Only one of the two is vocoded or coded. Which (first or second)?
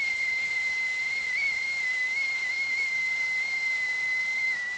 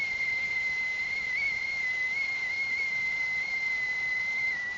second